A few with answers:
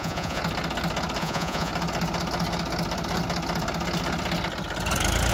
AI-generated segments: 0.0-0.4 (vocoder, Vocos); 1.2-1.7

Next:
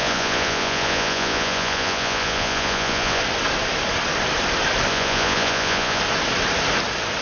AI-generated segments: 0.0-3.2 (vocoder, Vocos); 4.9-6.0

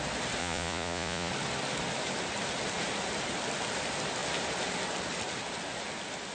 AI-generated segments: 0.4-1.3 (vocoder, Vocos)